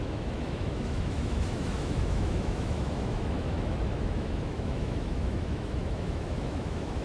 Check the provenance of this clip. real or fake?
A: fake